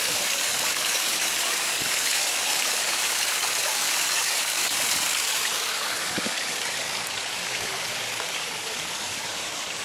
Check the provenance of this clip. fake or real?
fake